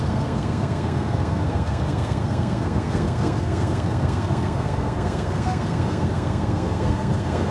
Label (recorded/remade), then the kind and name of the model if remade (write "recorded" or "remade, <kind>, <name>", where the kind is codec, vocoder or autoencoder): remade, codec, SNAC